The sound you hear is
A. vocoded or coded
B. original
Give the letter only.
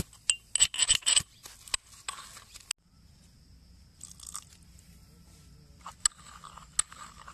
B